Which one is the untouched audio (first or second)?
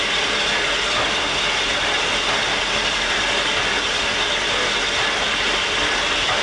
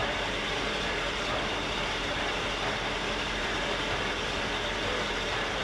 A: first